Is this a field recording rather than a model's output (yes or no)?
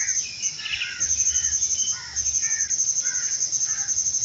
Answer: yes